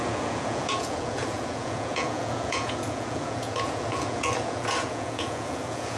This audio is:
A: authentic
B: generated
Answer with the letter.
B